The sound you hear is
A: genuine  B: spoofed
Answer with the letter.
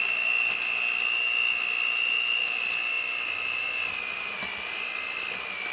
A